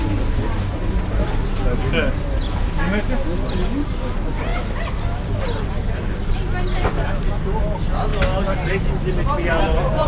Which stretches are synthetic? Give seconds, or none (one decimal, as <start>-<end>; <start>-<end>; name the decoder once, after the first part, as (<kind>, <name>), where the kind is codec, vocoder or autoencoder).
none